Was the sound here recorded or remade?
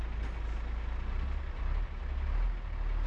recorded